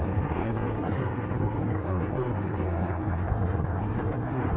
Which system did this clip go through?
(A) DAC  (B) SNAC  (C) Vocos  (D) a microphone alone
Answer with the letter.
B